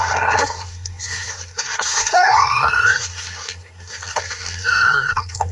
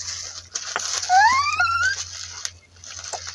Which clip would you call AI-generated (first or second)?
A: first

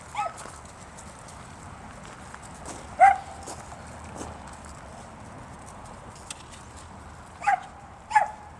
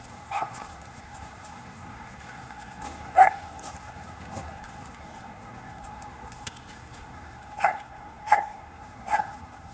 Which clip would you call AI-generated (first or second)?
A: second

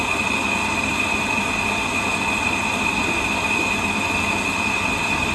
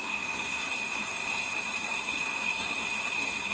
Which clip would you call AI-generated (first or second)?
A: second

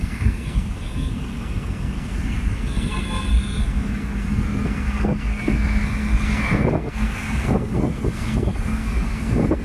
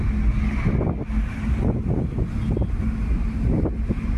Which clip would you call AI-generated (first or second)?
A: first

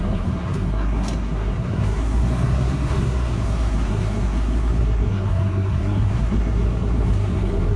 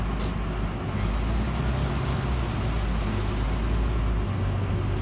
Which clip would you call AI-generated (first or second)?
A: first